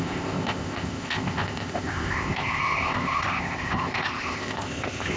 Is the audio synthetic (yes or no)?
yes